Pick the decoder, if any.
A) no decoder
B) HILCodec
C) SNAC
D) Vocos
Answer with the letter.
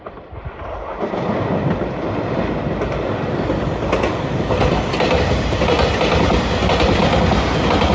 A